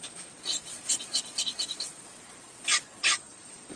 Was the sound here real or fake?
fake